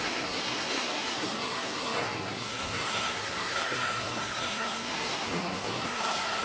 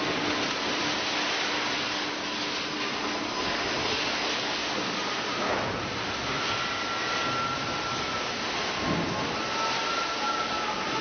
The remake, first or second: first